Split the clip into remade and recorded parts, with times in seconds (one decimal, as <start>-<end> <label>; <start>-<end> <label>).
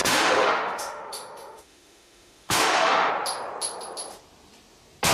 0.0-3.1 remade; 3.1-5.1 recorded